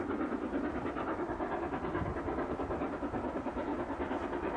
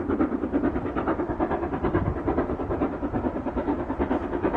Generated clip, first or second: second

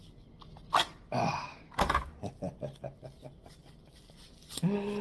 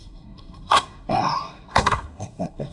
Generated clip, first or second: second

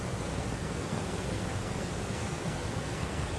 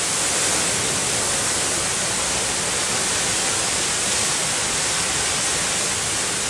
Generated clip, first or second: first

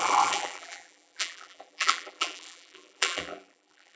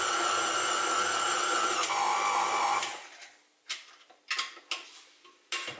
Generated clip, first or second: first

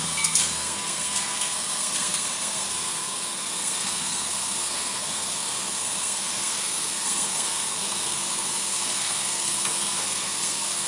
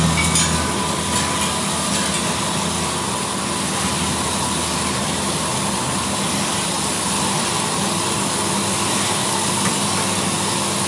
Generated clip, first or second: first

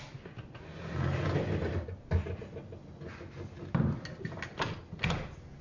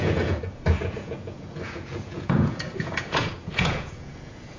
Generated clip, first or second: second